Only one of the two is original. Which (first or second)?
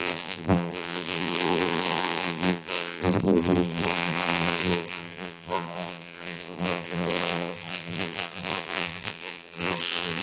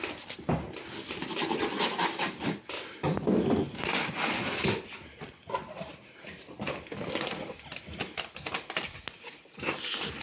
second